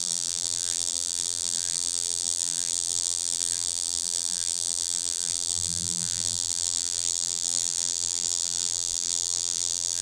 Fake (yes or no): yes